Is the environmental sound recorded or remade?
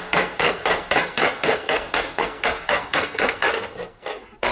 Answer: remade